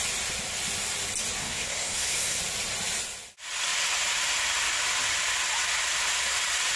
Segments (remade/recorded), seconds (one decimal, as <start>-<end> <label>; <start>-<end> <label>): 0.0-1.4 recorded; 1.4-2.4 remade; 2.4-6.8 recorded